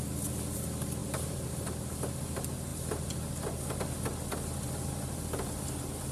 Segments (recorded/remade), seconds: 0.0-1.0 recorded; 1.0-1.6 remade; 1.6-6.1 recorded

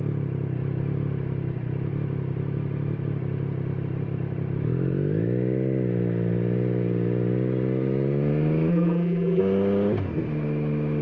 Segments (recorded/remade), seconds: 0.0-8.7 recorded; 8.7-9.4 remade; 9.4-11.0 recorded

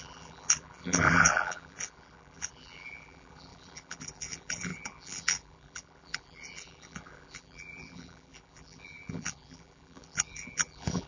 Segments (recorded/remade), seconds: 0.0-11.1 remade